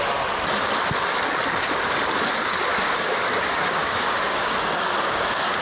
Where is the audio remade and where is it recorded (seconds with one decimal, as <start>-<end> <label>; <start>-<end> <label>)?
0.0-2.7 recorded; 2.7-5.6 remade